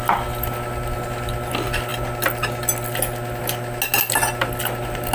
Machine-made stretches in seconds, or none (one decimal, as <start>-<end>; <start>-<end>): none